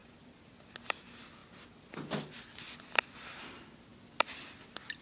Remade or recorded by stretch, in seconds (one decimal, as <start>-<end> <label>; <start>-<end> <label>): 0.0-0.8 remade; 0.8-5.0 recorded